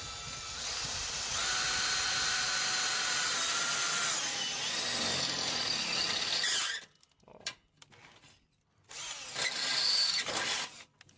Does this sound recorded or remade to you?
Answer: recorded